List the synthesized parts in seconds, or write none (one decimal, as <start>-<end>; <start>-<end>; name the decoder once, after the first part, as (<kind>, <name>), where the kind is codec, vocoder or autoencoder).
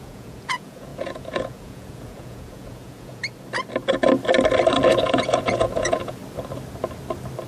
0.0-3.2 (vocoder, Vocos); 5.0-6.2